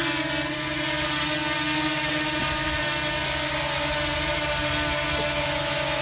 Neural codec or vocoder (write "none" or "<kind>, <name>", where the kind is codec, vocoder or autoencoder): none